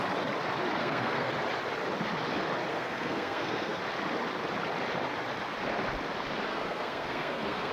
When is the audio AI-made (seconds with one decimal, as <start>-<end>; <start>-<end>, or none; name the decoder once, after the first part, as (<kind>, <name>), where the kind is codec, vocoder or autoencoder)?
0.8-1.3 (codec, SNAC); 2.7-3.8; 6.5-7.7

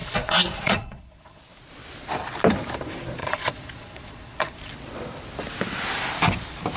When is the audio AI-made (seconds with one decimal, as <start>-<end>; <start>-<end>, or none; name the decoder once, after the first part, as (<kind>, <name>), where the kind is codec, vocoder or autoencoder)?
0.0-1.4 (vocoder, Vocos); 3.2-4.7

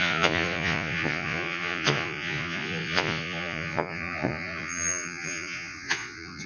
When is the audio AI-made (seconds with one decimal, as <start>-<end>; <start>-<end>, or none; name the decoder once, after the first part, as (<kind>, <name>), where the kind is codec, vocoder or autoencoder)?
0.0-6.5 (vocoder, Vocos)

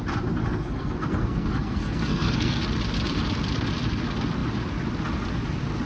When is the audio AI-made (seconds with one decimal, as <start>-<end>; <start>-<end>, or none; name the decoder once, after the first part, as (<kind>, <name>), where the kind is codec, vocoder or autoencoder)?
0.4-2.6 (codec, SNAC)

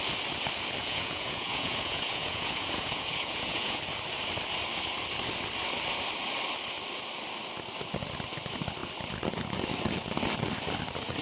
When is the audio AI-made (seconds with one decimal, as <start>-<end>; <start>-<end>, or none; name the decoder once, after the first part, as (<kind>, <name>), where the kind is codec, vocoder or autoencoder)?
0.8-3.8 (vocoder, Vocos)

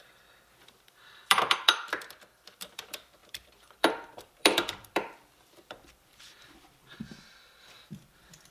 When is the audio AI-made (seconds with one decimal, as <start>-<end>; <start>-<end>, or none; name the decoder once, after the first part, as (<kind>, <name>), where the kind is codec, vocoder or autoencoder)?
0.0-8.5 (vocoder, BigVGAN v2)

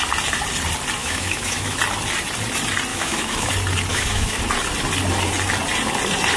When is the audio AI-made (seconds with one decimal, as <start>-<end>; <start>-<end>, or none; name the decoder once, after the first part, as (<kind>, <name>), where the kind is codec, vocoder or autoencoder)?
1.0-1.8 (autoencoder, DAC-VAE); 2.9-3.5; 3.9-4.4